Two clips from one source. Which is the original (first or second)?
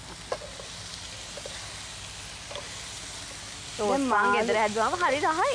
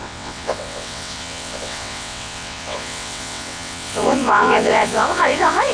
first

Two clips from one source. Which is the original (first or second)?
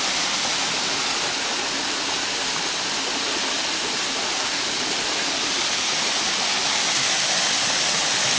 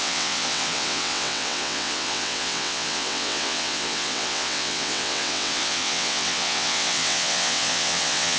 first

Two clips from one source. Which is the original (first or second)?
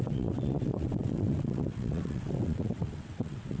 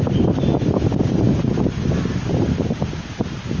second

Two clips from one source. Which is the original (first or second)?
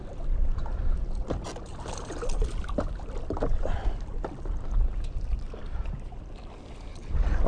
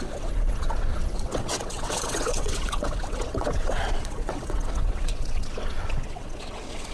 first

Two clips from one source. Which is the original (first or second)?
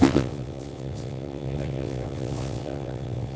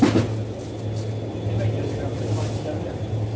second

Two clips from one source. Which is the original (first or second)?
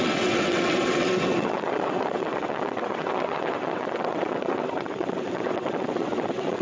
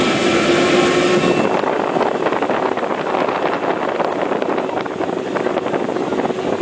second